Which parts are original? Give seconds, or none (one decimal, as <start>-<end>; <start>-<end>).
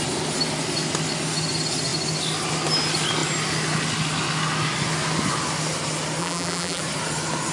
0.0-6.2; 6.8-7.5